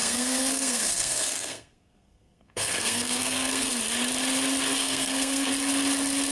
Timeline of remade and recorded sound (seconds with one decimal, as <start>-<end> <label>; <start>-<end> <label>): 0.0-3.7 remade; 3.7-4.8 recorded; 4.8-5.5 remade; 5.5-6.3 recorded